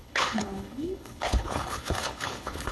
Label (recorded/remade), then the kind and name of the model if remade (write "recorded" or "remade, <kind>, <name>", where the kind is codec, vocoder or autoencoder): remade, codec, HILCodec